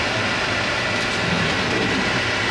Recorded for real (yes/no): yes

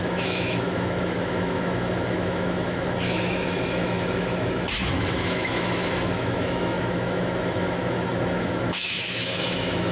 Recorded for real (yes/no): no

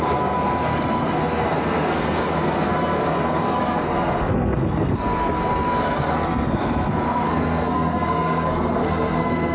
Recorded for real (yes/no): no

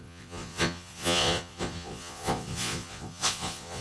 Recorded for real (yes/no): no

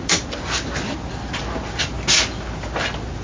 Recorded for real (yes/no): yes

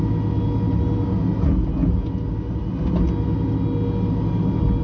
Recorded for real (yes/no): yes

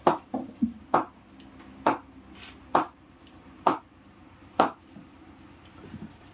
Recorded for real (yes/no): yes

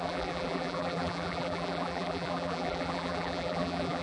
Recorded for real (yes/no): no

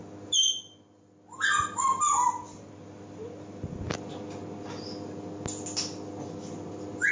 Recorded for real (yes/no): yes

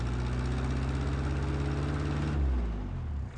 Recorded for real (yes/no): yes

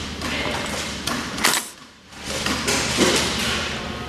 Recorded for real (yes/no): no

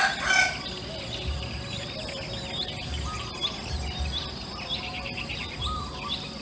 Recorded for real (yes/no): yes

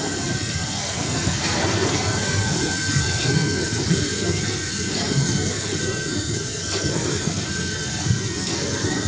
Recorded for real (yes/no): no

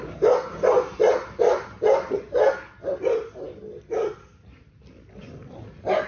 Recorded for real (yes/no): yes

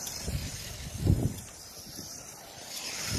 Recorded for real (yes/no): no